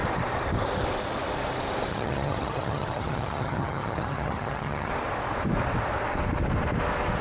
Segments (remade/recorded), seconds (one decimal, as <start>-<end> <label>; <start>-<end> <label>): 0.0-1.9 recorded; 1.9-4.9 remade; 4.9-7.2 recorded